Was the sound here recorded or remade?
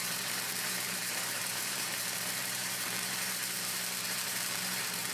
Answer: remade